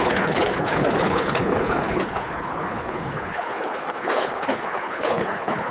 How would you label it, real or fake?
fake